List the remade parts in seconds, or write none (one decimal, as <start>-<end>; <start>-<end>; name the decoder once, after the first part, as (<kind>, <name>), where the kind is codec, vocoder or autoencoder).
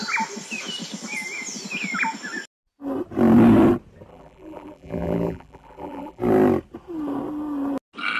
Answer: 4.1-6.2 (vocoder, BigVGAN v2)